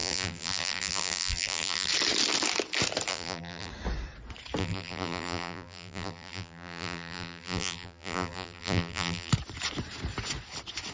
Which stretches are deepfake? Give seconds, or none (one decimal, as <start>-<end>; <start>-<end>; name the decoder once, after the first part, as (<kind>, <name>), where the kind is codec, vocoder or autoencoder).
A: 0.0-1.9 (vocoder, BigVGAN v2); 3.1-3.7; 4.6-9.3

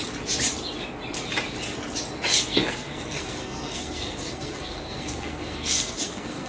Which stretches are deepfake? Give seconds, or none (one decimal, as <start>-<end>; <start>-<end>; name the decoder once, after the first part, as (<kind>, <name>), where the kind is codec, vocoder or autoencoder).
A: 2.3-6.5 (codec, SNAC)

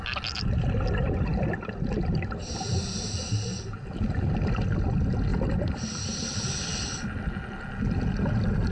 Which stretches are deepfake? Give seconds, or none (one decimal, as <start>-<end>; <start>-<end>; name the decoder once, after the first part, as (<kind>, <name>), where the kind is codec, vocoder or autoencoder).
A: 5.3-7.2 (vocoder, BigVGAN v2)

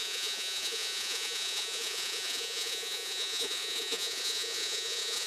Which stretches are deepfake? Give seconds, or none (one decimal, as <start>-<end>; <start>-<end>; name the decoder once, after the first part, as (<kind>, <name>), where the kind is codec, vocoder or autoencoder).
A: 0.0-5.3 (vocoder, Vocos)